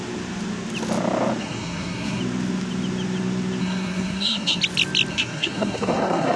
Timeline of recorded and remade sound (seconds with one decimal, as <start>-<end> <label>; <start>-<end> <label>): 0.0-1.4 recorded; 1.4-2.2 remade; 2.2-3.6 recorded; 3.6-4.6 remade; 4.6-5.1 recorded; 5.1-6.4 remade